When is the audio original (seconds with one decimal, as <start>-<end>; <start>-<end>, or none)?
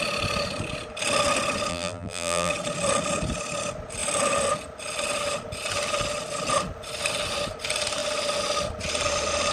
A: 0.0-1.7; 2.5-9.5